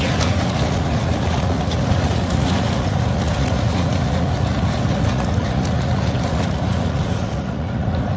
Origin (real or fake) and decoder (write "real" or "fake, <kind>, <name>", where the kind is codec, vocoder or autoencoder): fake, vocoder, Vocos